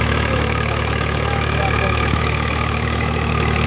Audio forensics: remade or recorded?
remade